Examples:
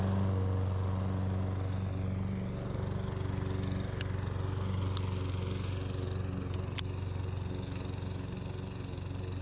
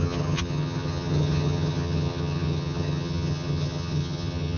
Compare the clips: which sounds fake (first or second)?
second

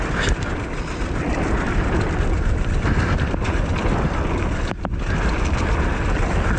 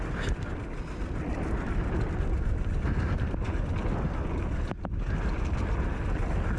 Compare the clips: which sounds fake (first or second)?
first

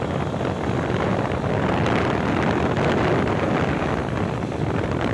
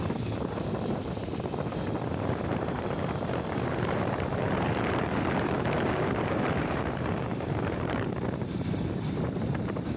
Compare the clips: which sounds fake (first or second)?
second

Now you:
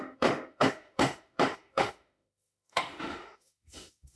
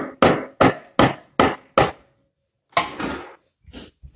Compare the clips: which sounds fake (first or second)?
first